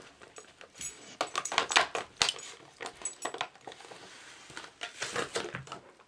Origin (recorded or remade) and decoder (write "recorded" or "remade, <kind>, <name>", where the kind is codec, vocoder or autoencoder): recorded